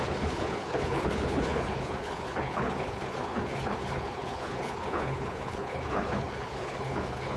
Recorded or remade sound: remade